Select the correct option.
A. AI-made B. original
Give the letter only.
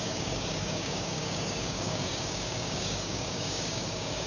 A